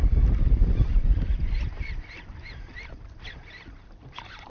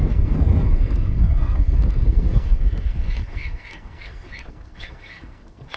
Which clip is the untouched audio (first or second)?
first